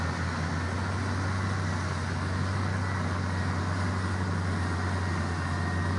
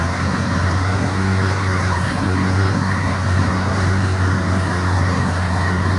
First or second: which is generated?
second